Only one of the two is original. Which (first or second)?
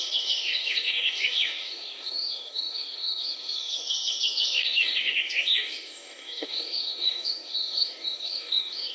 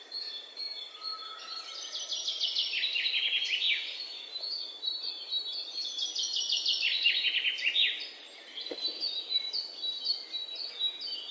second